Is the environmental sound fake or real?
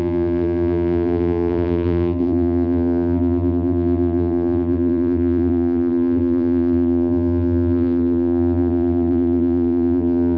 fake